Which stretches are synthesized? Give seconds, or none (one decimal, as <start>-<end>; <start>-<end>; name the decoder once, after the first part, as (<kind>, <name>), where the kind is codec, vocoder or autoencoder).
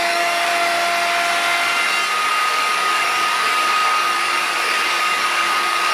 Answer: 0.0-0.5 (codec, DAC); 2.3-5.9